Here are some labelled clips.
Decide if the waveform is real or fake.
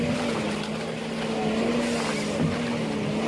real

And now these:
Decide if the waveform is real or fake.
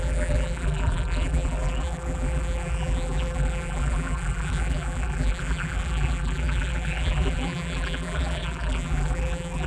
fake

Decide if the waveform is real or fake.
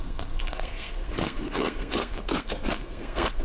fake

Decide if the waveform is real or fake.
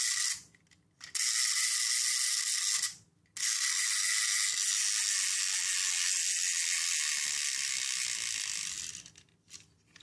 real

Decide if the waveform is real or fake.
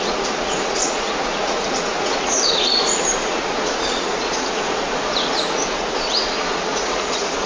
fake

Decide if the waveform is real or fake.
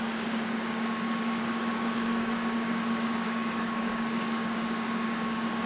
fake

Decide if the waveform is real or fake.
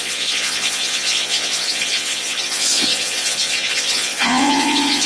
fake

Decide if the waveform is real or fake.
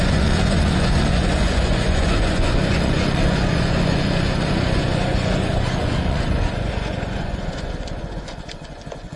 fake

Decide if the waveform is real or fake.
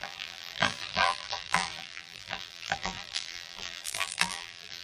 fake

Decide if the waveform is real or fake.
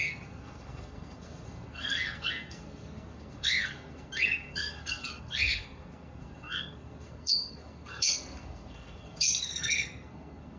fake